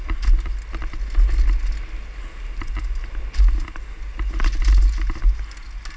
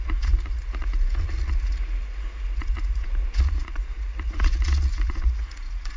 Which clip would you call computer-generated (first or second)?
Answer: second